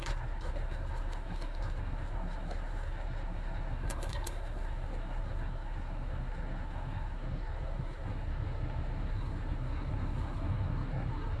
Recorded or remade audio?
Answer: remade